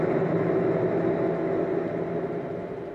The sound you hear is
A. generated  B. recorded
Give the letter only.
B